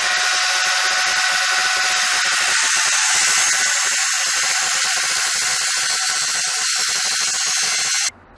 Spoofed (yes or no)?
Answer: no